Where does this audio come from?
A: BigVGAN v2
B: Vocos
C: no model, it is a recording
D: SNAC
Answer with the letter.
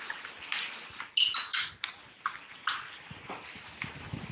C